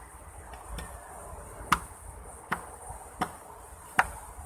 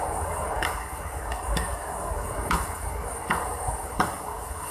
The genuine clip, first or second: first